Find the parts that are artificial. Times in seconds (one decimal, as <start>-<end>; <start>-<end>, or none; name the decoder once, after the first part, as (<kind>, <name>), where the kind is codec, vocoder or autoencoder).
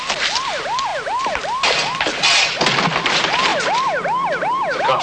none